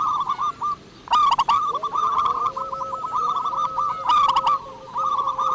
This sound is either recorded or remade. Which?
recorded